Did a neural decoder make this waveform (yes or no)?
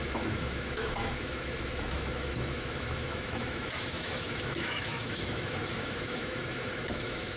yes